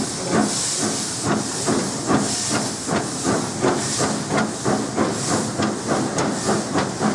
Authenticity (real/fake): real